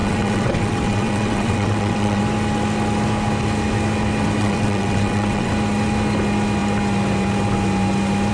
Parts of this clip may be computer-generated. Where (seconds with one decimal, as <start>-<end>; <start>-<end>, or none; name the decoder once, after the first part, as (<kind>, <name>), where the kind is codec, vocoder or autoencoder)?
0.0-2.2 (vocoder, WaveNeXt); 4.4-5.5